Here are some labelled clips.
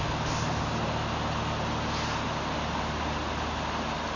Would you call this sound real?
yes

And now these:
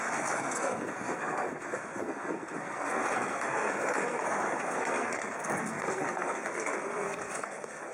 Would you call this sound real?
no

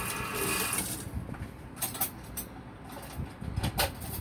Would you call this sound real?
yes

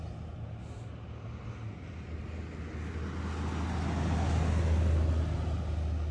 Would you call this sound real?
yes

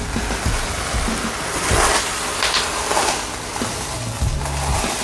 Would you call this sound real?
yes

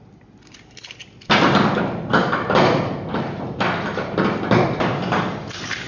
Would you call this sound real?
yes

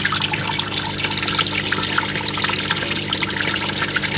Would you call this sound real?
yes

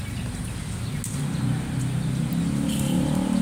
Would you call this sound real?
yes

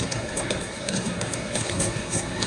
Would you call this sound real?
no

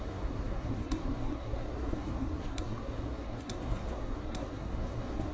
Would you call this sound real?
no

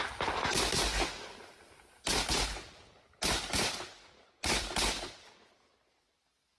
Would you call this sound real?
yes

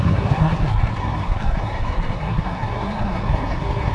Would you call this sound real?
no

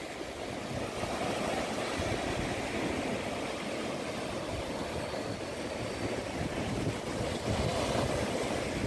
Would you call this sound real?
yes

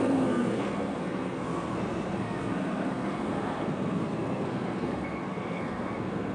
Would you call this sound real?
no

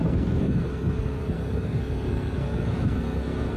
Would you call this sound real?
no